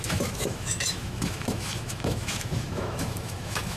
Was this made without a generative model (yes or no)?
no